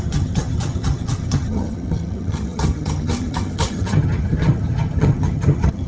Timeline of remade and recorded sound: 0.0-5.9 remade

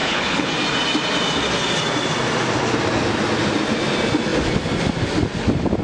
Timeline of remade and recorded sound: 0.0-0.5 remade; 0.5-5.8 recorded

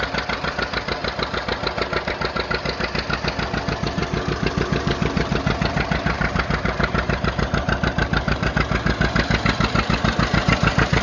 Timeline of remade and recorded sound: 0.0-4.0 recorded; 4.0-8.5 remade; 8.5-11.0 recorded

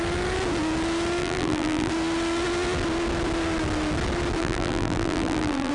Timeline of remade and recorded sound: 0.0-1.2 recorded; 1.2-1.9 remade; 1.9-4.4 recorded; 4.4-5.7 remade

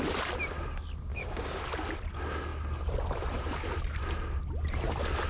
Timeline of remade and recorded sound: 0.0-1.1 recorded; 1.1-1.6 remade; 1.6-5.3 recorded